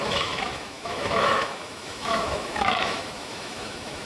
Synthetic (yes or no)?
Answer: yes